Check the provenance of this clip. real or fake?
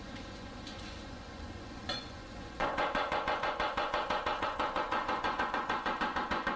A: fake